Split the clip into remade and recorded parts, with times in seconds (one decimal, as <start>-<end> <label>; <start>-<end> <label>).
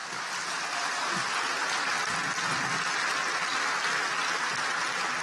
0.0-1.1 remade; 1.1-5.2 recorded